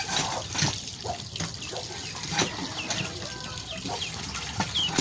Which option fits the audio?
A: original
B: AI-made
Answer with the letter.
A